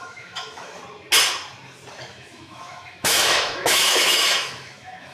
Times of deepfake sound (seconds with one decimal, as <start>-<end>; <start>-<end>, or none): 0.0-0.8; 2.1-5.1